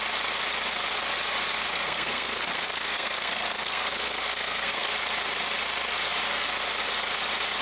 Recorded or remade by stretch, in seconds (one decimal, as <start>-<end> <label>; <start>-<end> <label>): 0.0-1.7 recorded; 1.7-4.9 remade; 4.9-7.6 recorded